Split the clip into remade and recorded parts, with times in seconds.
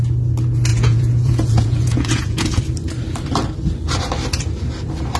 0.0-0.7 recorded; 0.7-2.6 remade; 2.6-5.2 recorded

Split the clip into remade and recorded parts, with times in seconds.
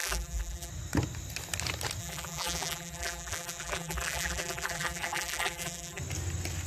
0.0-0.7 remade; 0.7-2.0 recorded; 2.0-6.0 remade; 6.0-6.7 recorded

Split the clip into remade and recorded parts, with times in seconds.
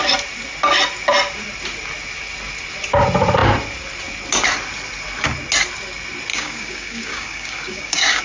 0.0-6.3 recorded; 6.3-8.2 remade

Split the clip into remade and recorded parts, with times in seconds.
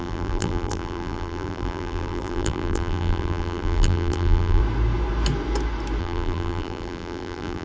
0.0-4.6 remade; 4.6-6.0 recorded; 6.0-7.6 remade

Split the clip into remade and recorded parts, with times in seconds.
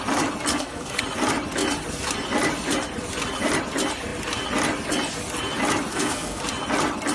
0.0-0.5 recorded; 0.5-1.0 remade; 1.0-5.9 recorded; 5.9-6.4 remade; 6.4-7.1 recorded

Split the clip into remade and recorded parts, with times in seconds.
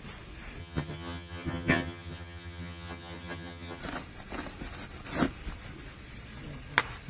0.0-0.6 recorded; 0.6-3.8 remade; 3.8-7.1 recorded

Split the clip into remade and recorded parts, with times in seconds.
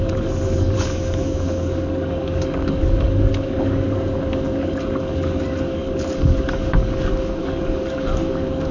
0.0-8.7 remade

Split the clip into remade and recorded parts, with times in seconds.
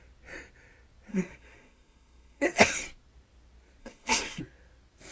0.0-1.1 recorded; 1.1-2.7 remade; 2.7-3.8 recorded; 3.8-4.4 remade; 4.4-5.1 recorded